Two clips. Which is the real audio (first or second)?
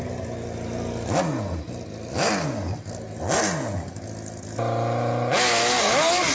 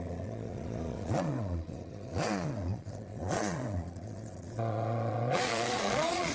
first